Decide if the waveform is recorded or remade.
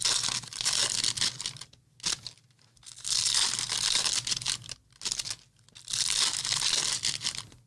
recorded